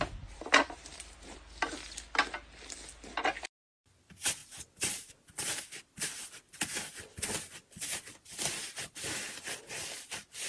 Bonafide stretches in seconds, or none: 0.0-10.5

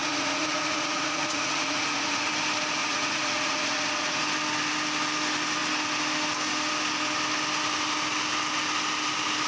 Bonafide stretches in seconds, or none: 2.3-2.8; 4.2-9.5

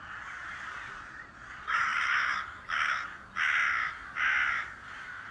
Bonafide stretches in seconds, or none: 1.9-5.3